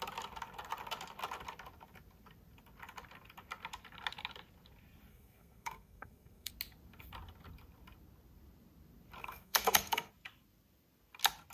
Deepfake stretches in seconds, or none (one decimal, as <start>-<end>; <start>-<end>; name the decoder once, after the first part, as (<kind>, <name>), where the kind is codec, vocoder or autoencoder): 5.1-6.5 (codec, SNAC); 9.2-10.1